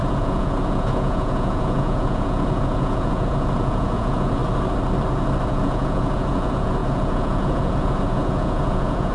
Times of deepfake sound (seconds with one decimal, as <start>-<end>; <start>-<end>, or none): 0.0-4.4; 5.5-9.1